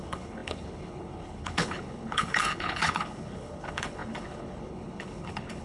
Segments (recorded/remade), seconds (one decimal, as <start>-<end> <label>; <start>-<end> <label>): 0.0-5.6 remade